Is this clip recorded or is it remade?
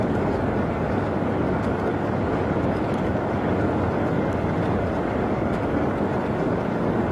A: remade